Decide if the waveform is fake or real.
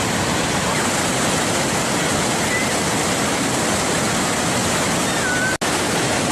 real